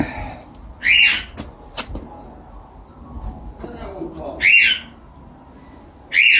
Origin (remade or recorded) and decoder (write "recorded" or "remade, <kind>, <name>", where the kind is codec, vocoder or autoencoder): recorded